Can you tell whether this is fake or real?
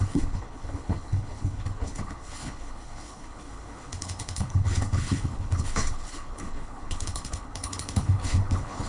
fake